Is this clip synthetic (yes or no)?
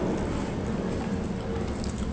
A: no